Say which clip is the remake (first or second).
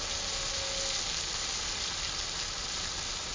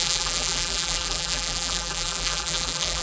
second